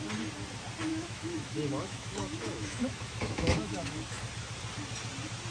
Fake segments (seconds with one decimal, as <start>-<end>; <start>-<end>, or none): 0.9-4.2